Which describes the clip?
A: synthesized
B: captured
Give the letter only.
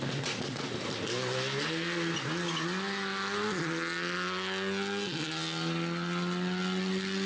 B